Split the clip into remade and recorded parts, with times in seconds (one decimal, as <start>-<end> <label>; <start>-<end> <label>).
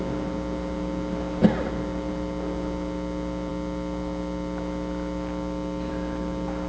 0.0-6.7 recorded